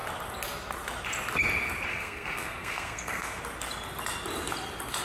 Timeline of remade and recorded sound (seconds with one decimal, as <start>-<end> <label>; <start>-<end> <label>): 0.0-1.9 recorded; 1.9-3.4 remade; 3.4-5.0 recorded